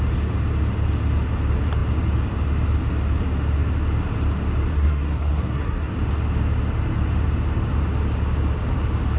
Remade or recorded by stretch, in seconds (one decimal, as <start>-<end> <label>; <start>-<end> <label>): 0.0-4.7 recorded; 4.7-5.9 remade; 5.9-9.2 recorded

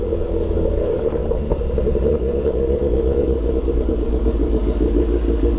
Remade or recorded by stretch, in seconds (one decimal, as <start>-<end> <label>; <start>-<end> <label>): 0.0-1.2 remade; 1.2-2.1 recorded; 2.1-5.6 remade

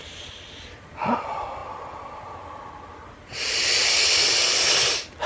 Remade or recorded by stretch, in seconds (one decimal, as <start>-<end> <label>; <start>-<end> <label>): 0.0-5.3 recorded

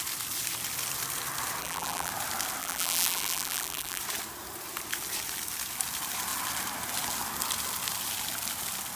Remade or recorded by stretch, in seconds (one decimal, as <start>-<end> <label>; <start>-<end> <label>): 0.0-1.6 recorded; 1.6-2.1 remade; 2.1-2.6 recorded; 2.6-4.0 remade; 4.0-9.0 recorded

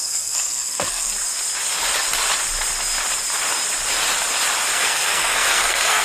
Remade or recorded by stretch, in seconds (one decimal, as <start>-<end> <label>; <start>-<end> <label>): 0.0-1.1 remade; 1.1-4.7 recorded; 4.7-6.0 remade

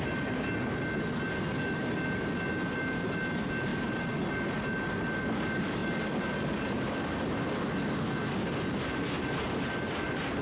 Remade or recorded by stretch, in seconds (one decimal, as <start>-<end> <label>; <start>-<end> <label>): 0.0-10.4 recorded

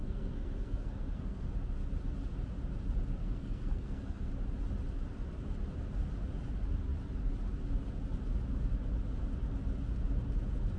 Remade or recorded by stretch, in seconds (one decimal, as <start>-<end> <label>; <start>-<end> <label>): 0.0-1.5 remade; 1.5-3.2 recorded; 3.2-4.3 remade; 4.3-10.8 recorded

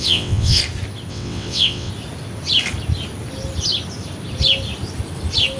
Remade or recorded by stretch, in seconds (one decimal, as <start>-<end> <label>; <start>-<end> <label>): 0.0-0.6 remade; 0.6-1.1 recorded; 1.1-1.9 remade; 1.9-5.6 recorded